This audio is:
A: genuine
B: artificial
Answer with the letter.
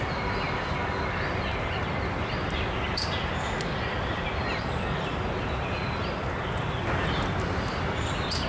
A